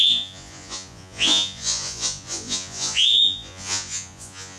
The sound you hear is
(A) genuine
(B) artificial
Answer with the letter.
B